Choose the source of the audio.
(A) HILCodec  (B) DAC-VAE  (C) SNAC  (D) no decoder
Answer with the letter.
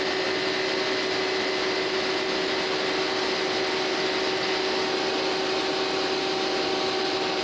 D